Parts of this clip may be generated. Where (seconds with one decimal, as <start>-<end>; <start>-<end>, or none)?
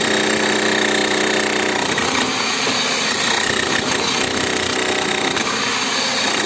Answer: none